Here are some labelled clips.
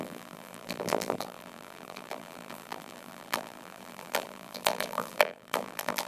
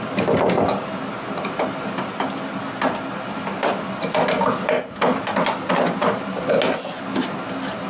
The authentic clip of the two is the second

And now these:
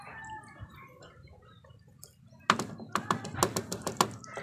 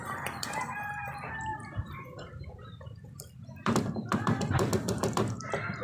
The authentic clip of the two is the first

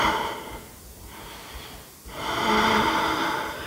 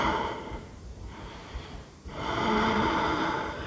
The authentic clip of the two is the first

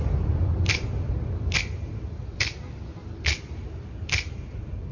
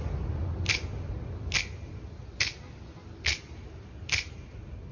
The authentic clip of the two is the second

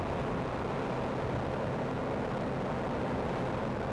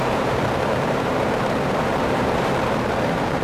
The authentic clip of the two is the first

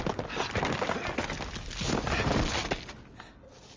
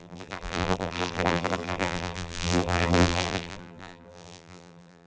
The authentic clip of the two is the first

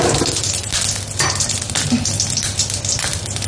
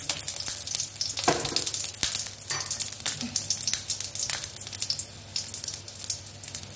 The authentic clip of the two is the second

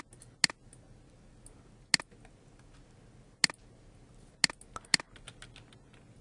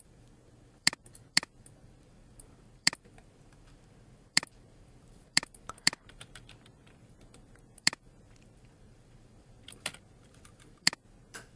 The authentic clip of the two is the first